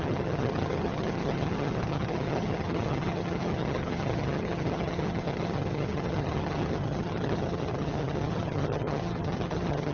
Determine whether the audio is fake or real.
fake